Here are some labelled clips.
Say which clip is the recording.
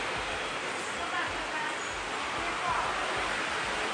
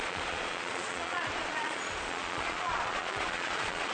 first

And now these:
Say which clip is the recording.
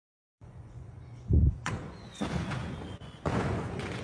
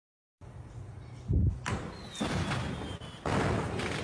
second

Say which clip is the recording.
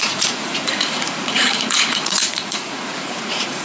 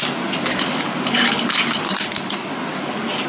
second